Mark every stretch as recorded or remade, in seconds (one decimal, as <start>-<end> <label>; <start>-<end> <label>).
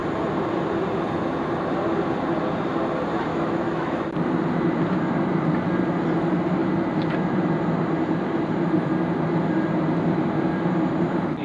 0.0-3.3 recorded; 3.3-4.0 remade; 4.0-11.4 recorded